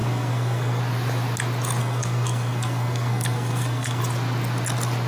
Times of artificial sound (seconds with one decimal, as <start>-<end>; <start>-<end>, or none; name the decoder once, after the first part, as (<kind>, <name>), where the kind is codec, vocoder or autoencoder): 0.0-0.8 (codec, SNAC); 1.8-4.0

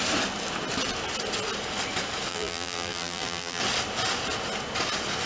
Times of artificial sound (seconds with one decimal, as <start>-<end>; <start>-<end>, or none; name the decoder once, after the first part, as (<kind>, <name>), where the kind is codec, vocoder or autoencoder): 2.3-3.6 (vocoder, BigVGAN v2)